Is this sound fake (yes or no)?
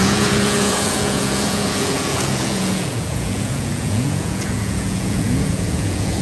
yes